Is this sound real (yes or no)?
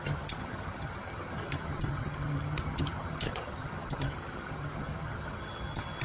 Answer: no